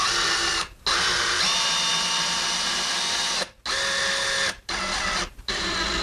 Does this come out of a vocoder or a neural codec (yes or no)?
no